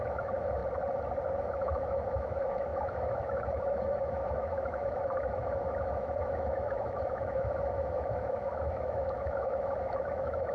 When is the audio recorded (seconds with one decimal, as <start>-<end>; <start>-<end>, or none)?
0.6-1.4